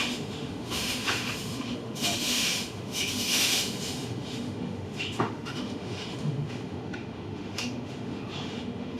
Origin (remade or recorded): remade